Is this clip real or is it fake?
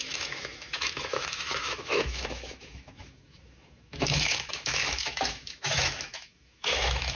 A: fake